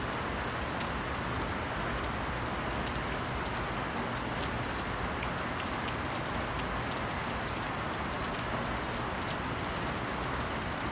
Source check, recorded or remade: recorded